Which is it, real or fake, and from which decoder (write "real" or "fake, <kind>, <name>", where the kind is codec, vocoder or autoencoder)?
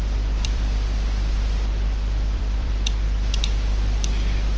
fake, vocoder, BigVGAN v2